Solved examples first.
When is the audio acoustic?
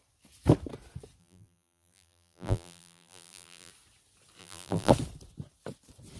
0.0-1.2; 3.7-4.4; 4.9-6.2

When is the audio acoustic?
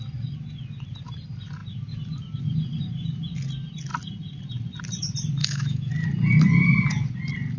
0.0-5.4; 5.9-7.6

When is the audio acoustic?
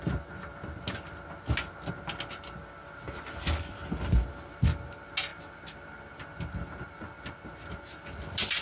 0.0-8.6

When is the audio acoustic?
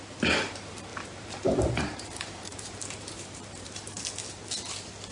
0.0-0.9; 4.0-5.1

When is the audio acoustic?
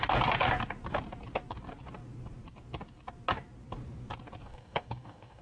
0.0-4.4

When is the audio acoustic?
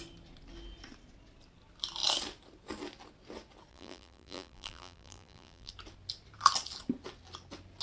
0.0-3.7; 5.7-7.8